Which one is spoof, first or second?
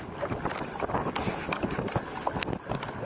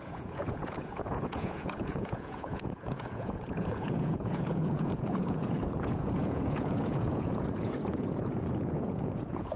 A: second